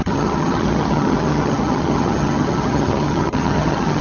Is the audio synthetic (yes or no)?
yes